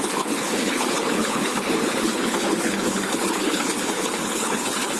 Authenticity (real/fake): fake